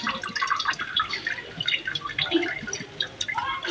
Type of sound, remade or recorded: recorded